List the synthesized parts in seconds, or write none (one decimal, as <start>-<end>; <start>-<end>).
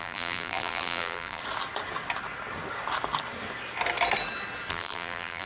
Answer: 0.0-1.4; 4.7-5.5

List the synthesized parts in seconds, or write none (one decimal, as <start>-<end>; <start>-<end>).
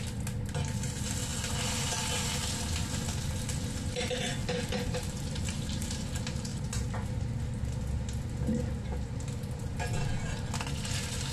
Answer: 4.4-6.0; 6.5-7.2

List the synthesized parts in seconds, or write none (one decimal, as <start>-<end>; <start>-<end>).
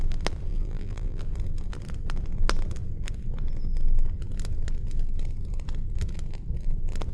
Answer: 0.5-1.2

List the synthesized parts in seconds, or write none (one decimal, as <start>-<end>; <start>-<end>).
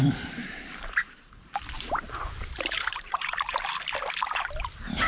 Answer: 0.0-0.6; 1.0-3.7